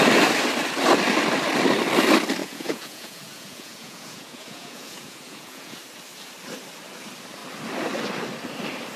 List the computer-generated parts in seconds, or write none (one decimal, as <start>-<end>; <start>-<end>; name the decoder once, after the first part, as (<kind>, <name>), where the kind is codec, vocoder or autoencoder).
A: 2.4-5.8 (vocoder, Vocos)